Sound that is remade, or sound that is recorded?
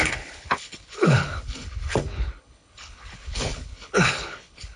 remade